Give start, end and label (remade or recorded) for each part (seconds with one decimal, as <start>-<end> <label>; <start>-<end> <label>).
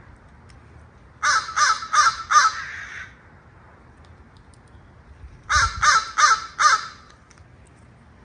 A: 0.0-8.2 recorded